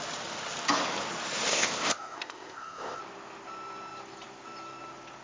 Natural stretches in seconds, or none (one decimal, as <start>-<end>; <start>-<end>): 0.0-1.5; 3.0-5.2